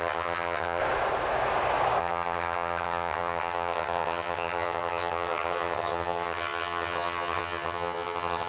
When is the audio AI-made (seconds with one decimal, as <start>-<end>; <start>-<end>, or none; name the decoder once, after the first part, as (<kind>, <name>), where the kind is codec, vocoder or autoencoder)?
0.0-0.8 (vocoder, HiFi-GAN); 2.0-8.5